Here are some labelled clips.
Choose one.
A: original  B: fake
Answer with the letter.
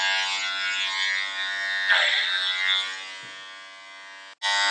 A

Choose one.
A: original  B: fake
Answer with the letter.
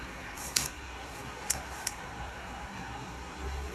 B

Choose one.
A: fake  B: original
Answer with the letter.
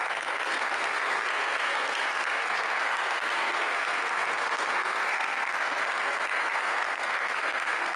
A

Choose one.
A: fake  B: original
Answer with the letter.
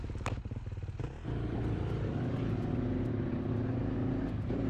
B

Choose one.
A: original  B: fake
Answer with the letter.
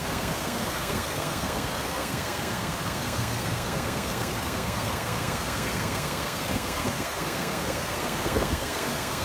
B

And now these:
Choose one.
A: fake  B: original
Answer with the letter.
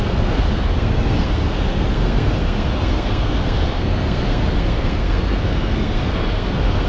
A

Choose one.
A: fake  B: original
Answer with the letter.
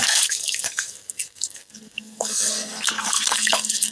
A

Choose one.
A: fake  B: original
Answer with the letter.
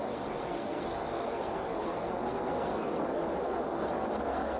A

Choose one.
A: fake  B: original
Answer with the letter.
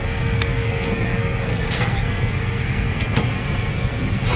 A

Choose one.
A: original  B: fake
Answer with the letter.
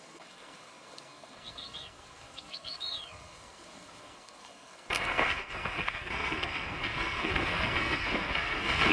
B